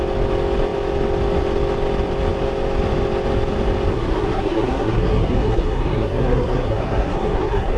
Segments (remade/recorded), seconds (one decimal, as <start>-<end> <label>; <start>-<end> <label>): 0.0-3.9 recorded; 3.9-7.8 remade

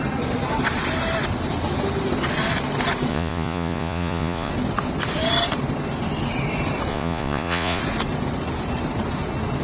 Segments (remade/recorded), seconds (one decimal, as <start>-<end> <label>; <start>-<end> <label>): 0.0-3.1 recorded; 3.1-4.5 remade; 4.5-6.9 recorded; 6.9-7.8 remade; 7.8-9.6 recorded

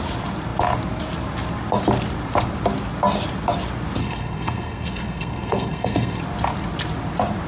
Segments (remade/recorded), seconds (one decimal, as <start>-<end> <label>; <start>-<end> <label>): 0.0-4.0 recorded; 4.0-6.2 remade; 6.2-7.5 recorded

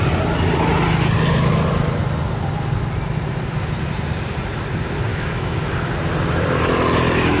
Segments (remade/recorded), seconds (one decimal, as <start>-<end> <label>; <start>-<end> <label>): 0.0-5.1 recorded; 5.1-5.7 remade; 5.7-7.4 recorded

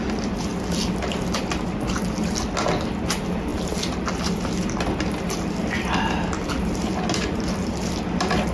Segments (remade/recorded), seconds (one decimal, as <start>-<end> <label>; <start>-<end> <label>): 0.0-8.5 recorded

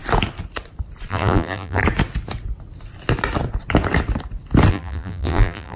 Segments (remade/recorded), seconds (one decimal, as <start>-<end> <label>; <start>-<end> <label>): 0.0-1.1 recorded; 1.1-1.8 remade; 1.8-4.7 recorded; 4.7-5.8 remade